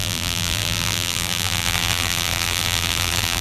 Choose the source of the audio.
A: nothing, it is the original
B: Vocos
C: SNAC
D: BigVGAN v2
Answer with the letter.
D